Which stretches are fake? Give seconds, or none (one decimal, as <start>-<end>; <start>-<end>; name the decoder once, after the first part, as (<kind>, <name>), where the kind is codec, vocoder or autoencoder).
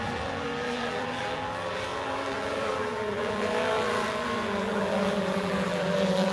0.0-6.3 (vocoder, BigVGAN v2)